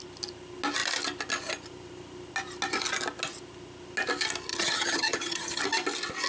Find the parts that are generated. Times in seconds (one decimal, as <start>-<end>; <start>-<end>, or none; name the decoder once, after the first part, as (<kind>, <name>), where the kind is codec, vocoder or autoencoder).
4.5-5.6 (vocoder, HiFi-GAN)